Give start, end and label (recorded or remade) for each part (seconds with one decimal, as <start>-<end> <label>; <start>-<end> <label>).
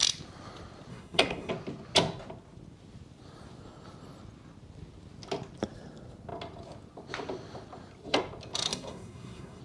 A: 0.0-0.9 recorded; 0.9-1.5 remade; 1.5-8.7 recorded; 8.7-9.6 remade